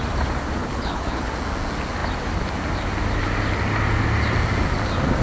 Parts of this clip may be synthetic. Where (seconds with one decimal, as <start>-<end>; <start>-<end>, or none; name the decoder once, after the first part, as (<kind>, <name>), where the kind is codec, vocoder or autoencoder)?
0.6-1.3 (codec, HILCodec)